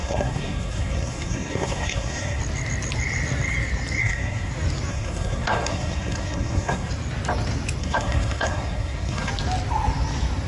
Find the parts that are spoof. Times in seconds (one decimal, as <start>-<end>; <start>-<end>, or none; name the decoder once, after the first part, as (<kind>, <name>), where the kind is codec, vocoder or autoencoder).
0.0-2.4 (codec, SNAC); 4.0-4.5; 4.9-6.9; 7.8-9.3